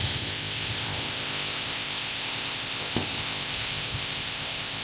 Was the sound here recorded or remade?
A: remade